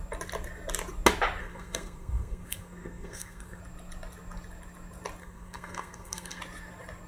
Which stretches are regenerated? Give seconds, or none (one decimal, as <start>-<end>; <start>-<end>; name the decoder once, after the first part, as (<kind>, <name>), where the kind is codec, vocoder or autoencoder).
1.4-3.6 (codec, SNAC); 5.2-6.4